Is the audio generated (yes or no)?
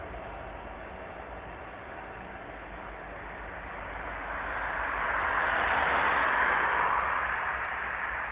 no